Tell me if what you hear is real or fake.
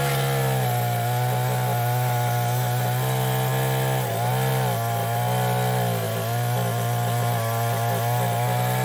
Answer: real